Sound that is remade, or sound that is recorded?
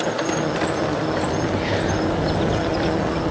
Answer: recorded